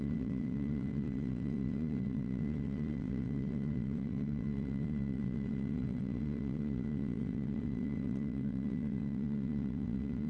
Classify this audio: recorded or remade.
remade